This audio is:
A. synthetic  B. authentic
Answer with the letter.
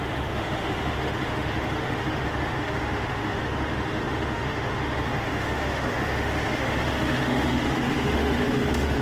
A